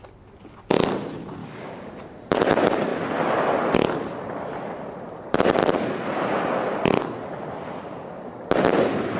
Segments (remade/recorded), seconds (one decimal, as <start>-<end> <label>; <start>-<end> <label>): 0.0-1.4 recorded; 1.4-1.9 remade; 1.9-9.2 recorded